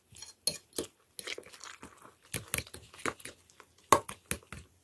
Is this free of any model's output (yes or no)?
yes